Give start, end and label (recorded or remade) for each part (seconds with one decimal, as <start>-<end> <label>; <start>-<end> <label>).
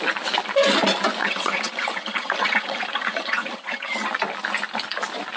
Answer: 0.0-1.2 recorded; 1.2-4.1 remade; 4.1-5.4 recorded